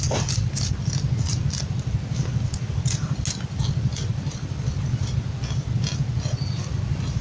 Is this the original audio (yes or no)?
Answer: yes